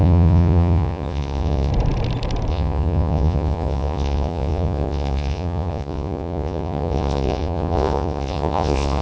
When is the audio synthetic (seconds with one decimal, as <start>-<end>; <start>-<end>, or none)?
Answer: 0.0-1.7; 2.5-9.0